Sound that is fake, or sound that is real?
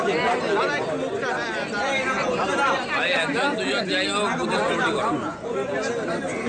real